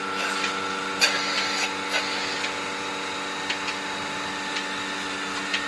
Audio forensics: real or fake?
real